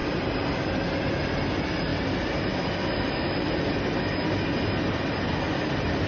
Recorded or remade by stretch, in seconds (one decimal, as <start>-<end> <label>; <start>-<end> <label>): 0.0-1.1 recorded; 1.1-1.9 remade; 1.9-5.3 recorded; 5.3-6.1 remade